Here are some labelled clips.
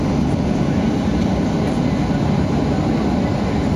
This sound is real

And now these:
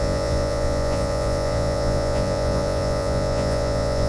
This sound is fake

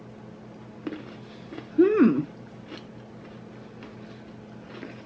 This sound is real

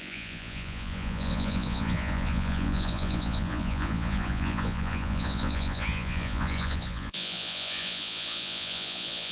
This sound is fake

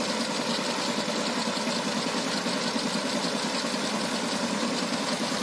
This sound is real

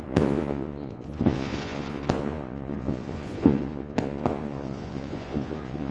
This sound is fake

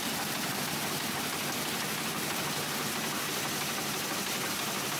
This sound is real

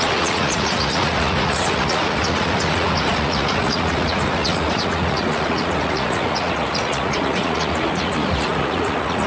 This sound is fake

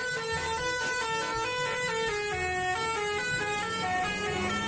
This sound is real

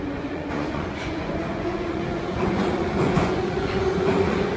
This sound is fake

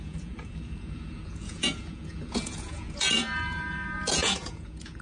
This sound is fake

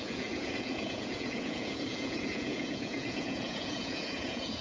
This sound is fake